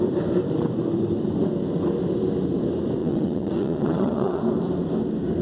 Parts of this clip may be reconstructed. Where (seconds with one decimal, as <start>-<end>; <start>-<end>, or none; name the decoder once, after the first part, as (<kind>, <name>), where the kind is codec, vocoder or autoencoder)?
3.0-4.4 (vocoder, WaveNeXt)